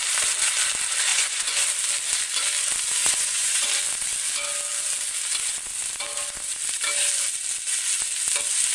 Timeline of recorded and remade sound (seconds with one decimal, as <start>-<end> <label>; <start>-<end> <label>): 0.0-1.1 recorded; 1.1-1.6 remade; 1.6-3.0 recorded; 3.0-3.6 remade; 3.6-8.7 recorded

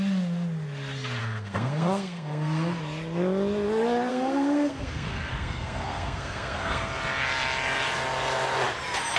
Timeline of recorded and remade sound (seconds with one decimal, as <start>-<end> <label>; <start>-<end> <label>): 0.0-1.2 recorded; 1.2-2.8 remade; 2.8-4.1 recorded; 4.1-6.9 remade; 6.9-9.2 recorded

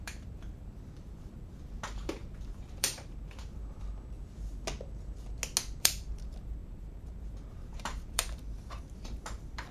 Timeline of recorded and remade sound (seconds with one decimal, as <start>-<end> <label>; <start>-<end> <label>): 0.0-3.6 remade; 3.6-5.8 recorded; 5.8-9.7 remade

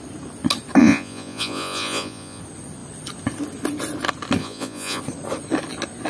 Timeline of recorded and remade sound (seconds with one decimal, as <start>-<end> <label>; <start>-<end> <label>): 0.0-0.8 recorded; 0.8-2.4 remade; 2.4-4.4 recorded; 4.4-5.0 remade; 5.0-6.1 recorded

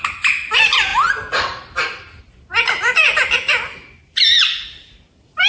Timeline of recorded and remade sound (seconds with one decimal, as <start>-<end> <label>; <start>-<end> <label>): 0.0-5.5 recorded